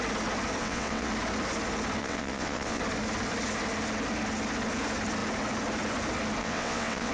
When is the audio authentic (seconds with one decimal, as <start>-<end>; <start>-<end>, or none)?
0.0-0.6; 1.1-2.0; 2.8-6.4